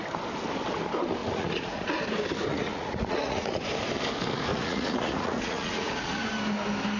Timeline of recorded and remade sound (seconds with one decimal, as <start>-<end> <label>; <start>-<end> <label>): 0.0-1.2 recorded; 1.2-2.0 remade; 2.0-2.5 recorded; 2.5-3.6 remade; 3.6-4.5 recorded; 4.5-6.3 remade; 6.3-7.0 recorded